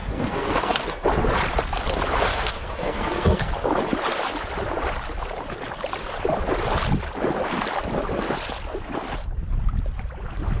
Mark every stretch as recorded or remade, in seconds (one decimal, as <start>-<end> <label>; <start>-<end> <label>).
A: 0.0-1.1 remade; 1.1-2.3 recorded; 2.3-3.5 remade; 3.5-10.6 recorded